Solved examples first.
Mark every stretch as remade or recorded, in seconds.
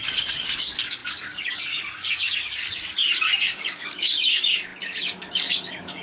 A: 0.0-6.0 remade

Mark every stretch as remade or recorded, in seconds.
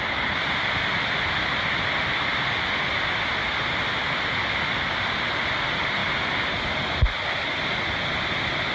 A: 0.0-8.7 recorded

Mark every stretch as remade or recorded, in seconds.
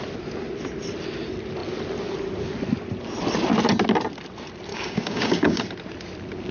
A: 0.0-4.7 recorded; 4.7-5.6 remade; 5.6-6.5 recorded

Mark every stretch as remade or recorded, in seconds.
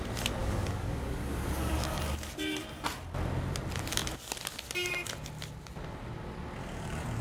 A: 0.0-0.4 recorded; 0.4-2.0 remade; 2.0-6.6 recorded; 6.6-7.2 remade